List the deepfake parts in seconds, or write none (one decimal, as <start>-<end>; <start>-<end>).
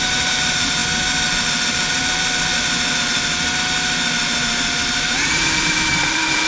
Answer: 0.0-0.8; 1.7-2.5; 4.4-6.5